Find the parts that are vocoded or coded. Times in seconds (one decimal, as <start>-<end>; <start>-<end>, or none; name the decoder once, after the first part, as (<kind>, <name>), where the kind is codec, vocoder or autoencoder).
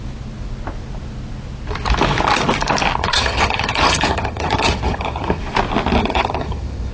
3.0-5.4 (vocoder, HiFi-GAN); 6.0-6.9